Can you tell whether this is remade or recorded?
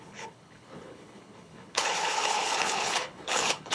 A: remade